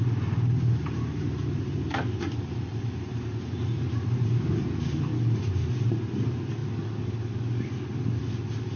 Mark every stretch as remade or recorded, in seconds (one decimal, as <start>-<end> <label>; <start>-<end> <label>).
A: 0.0-5.1 remade; 5.1-5.7 recorded; 5.7-6.6 remade; 6.6-8.2 recorded; 8.2-8.8 remade